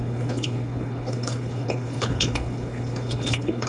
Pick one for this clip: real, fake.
fake